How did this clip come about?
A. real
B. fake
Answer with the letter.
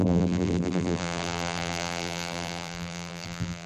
B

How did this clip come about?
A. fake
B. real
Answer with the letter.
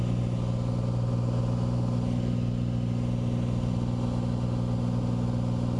B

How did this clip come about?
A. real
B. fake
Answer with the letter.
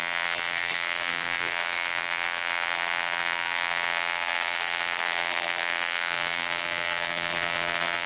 B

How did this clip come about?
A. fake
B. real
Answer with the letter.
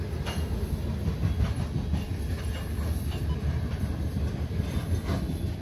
B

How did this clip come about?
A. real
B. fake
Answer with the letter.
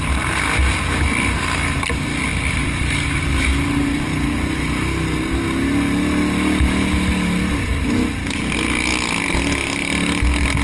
A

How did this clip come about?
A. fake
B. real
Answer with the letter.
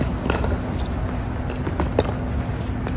B